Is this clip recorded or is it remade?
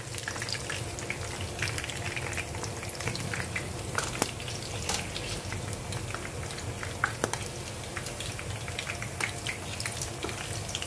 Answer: recorded